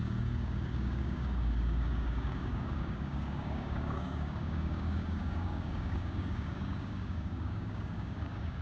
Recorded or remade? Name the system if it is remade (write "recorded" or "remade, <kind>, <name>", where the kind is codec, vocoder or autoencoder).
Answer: remade, codec, DAC